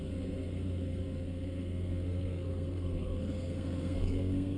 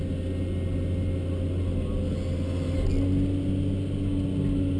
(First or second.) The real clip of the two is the second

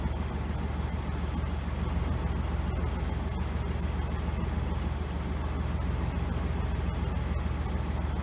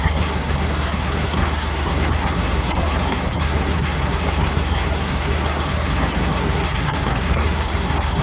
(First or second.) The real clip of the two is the first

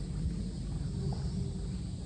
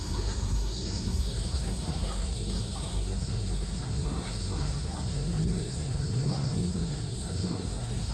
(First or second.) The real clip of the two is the first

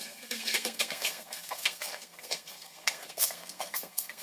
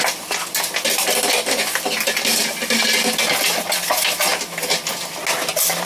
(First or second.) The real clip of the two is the second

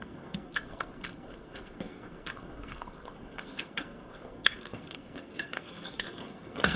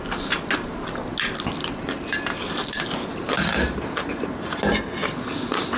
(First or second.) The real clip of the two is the second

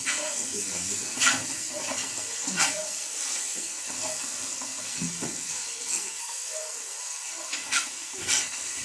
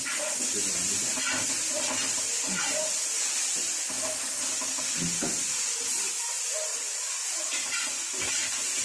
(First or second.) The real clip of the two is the second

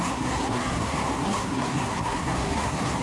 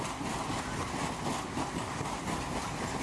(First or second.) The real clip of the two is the second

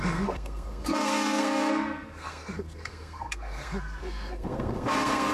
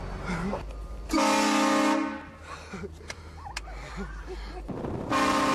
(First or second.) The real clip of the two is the second